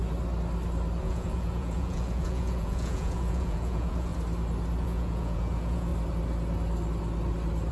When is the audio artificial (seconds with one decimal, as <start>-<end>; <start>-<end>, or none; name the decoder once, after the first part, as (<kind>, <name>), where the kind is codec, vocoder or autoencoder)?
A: 1.0-4.1 (vocoder, Vocos); 4.8-5.9